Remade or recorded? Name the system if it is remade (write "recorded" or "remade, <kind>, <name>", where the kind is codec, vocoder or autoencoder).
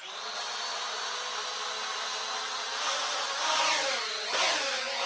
recorded